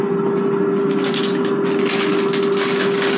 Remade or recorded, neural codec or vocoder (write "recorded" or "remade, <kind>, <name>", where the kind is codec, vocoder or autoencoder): recorded